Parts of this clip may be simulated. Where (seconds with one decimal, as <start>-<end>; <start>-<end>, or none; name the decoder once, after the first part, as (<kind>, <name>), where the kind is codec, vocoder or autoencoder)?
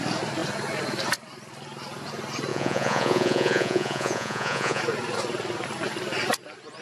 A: 2.5-4.8 (vocoder, Vocos)